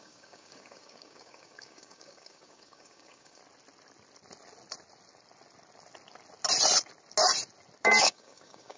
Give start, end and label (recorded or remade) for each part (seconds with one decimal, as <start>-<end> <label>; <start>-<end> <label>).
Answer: 0.0-3.4 remade; 3.4-8.0 recorded; 8.0-8.8 remade